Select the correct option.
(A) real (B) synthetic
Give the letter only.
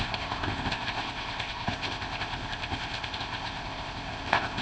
B